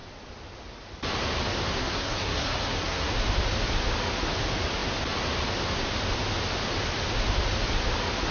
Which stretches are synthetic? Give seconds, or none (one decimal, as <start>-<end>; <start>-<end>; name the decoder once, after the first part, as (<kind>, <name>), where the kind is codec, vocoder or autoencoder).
1.8-3.1 (codec, SNAC)

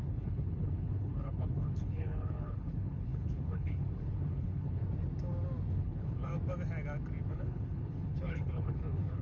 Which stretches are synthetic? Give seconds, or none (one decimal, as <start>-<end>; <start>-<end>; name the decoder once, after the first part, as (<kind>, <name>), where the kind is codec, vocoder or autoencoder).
0.0-4.8 (codec, HILCodec); 5.7-6.3; 7.3-9.2

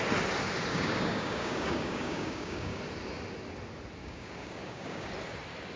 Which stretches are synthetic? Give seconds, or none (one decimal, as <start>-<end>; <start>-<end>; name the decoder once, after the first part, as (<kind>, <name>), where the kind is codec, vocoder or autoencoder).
0.7-2.8 (codec, DAC); 4.0-5.1

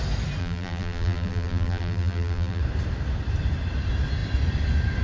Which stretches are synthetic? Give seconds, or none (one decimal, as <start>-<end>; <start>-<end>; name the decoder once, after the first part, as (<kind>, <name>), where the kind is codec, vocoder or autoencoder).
0.4-2.6 (vocoder, BigVGAN v2)

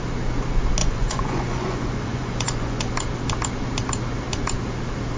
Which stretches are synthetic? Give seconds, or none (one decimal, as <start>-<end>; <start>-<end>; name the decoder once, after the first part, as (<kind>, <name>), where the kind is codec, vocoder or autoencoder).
0.8-2.9 (vocoder, Vocos)

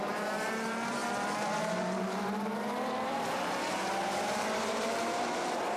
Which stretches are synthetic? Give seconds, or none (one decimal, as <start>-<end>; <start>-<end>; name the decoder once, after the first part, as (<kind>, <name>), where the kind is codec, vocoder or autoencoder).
0.0-1.0 (vocoder, BigVGAN v2); 1.6-5.8

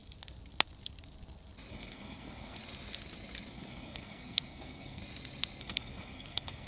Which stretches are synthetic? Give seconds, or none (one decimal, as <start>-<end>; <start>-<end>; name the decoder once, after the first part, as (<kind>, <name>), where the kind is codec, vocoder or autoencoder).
1.7-2.6 (codec, SNAC); 3.5-5.0; 5.6-6.7

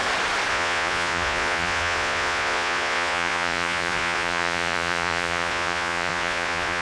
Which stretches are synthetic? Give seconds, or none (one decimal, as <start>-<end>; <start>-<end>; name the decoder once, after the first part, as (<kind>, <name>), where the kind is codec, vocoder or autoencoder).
0.5-6.8 (vocoder, Vocos)